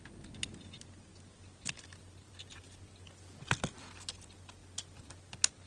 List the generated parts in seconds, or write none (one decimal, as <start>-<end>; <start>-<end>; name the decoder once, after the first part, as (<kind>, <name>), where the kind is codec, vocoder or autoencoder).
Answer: none